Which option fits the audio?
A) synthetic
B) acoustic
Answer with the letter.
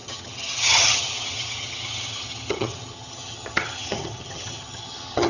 A